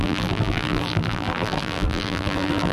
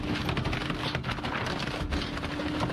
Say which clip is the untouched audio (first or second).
second